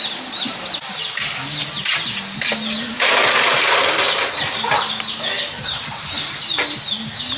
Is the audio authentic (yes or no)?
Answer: yes